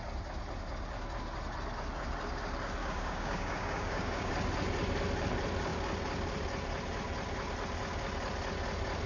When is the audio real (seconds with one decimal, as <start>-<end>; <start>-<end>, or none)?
0.0-2.8; 4.3-9.1